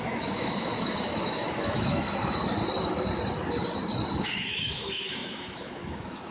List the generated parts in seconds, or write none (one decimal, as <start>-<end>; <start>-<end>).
0.0-2.4; 4.1-6.3